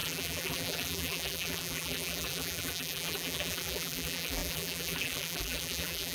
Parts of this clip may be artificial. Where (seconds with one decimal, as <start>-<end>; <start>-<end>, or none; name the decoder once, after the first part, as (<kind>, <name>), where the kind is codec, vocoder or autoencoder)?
0.0-6.1 (vocoder, BigVGAN v2)